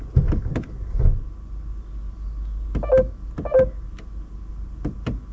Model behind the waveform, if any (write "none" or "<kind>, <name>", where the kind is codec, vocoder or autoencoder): none